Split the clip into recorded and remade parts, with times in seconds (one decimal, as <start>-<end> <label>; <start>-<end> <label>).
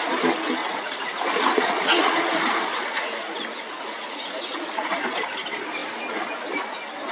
0.0-0.6 recorded; 0.6-4.9 remade; 4.9-7.1 recorded